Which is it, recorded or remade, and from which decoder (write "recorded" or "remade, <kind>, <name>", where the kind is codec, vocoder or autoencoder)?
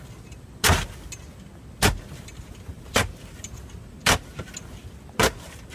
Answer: recorded